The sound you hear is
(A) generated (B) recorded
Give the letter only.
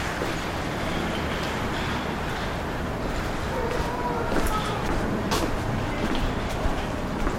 A